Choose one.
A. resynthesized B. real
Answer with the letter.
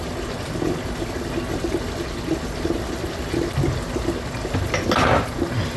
B